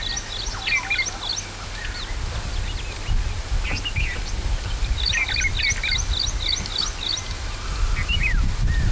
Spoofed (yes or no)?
no